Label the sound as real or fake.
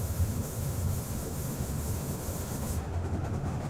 fake